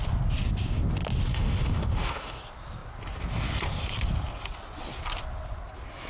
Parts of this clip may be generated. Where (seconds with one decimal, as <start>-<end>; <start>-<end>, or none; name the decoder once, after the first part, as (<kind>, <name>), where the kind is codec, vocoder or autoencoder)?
1.3-2.4 (autoencoder, DAC-VAE)